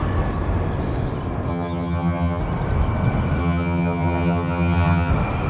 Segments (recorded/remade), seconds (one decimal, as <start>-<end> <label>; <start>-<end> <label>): 0.0-1.5 recorded; 1.5-2.4 remade; 2.4-3.4 recorded; 3.4-5.1 remade; 5.1-5.5 recorded